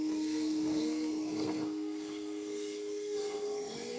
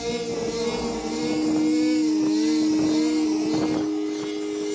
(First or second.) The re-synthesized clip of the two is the first